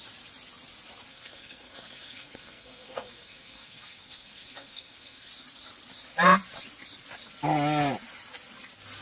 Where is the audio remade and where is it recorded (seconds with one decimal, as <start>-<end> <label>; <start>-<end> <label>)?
0.0-1.1 recorded; 1.1-5.3 remade; 5.3-9.0 recorded